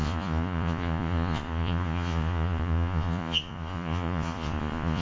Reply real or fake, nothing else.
fake